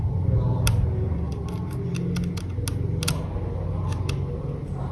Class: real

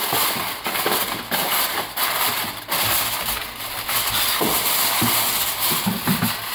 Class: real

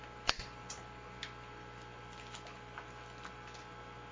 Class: real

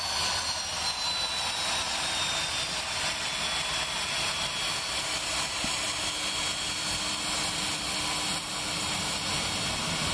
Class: real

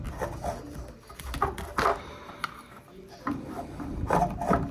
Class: real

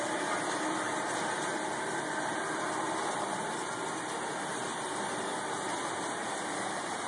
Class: fake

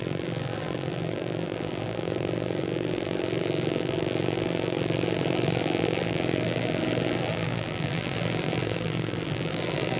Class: fake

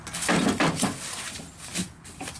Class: real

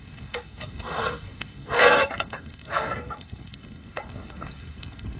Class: fake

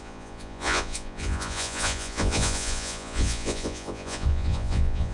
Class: fake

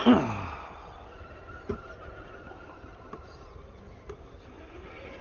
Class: real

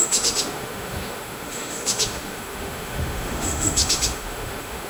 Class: fake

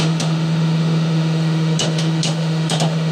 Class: fake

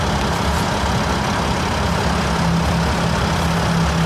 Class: real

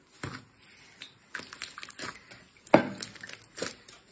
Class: real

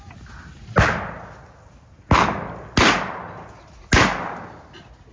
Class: real